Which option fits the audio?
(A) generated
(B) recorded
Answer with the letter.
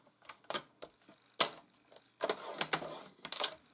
B